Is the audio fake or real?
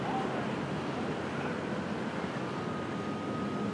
real